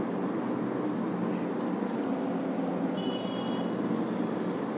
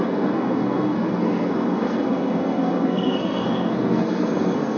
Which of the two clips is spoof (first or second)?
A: second